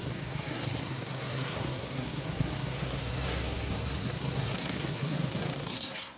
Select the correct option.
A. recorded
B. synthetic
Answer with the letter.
B